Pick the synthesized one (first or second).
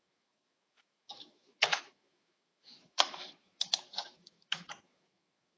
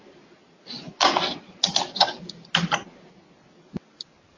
first